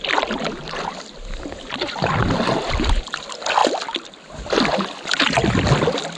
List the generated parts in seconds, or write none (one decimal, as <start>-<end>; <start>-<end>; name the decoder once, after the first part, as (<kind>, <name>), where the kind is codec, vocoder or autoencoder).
none